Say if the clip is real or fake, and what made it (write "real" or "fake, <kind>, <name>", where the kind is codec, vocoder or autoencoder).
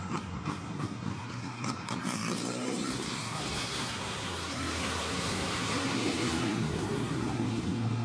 fake, codec, SNAC